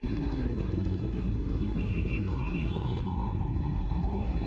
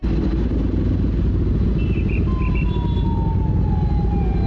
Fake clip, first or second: first